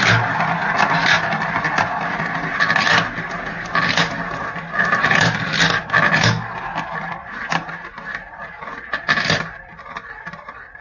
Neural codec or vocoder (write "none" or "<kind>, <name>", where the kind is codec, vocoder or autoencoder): none